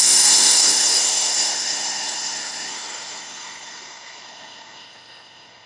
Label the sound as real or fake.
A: fake